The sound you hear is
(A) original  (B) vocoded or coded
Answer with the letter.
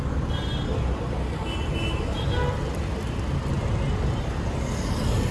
A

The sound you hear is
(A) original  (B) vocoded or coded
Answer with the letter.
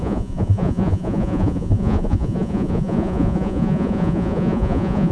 B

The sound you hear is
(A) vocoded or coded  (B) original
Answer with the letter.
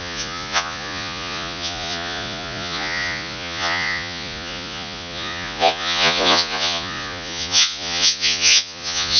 A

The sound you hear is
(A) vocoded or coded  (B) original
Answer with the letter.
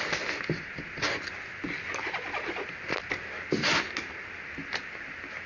B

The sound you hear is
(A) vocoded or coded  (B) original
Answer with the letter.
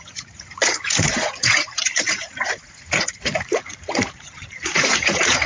A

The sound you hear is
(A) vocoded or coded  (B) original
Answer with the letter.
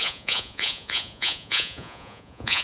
A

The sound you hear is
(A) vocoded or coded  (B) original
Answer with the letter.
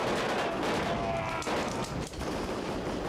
B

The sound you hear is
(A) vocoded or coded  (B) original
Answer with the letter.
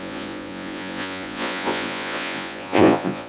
A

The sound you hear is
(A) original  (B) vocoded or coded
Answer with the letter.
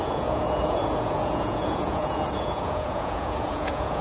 B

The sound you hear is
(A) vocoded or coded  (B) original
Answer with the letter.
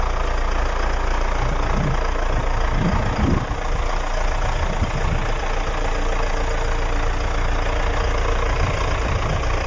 B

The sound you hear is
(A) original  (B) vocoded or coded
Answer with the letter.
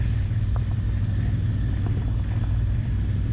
A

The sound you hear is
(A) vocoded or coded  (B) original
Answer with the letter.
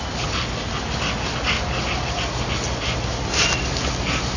B